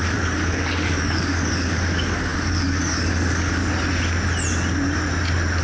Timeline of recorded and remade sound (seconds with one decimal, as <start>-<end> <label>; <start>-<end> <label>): 0.0-3.6 remade; 3.6-5.6 recorded